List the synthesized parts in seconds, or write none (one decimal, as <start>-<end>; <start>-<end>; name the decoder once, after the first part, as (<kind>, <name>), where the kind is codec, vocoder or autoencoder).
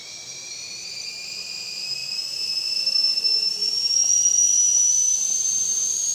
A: 0.0-0.9 (vocoder, BigVGAN v2)